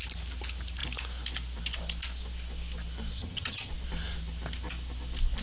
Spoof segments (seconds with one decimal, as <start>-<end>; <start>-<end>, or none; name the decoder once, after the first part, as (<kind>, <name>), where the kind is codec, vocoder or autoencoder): 3.2-3.7 (vocoder, HiFi-GAN)